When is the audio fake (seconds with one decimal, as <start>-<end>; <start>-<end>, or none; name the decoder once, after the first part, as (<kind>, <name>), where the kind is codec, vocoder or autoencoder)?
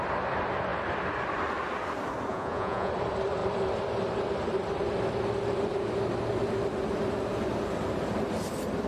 2.3-2.9 (vocoder, Vocos)